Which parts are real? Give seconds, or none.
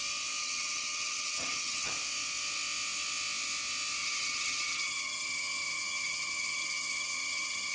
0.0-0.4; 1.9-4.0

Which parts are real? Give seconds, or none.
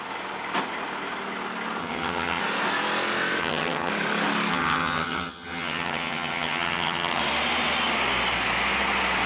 0.0-1.8; 2.4-3.4; 3.9-4.5; 7.2-9.3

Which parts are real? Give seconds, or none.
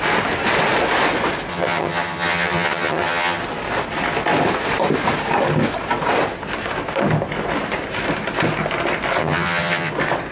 0.0-1.5; 3.4-9.2; 9.9-10.3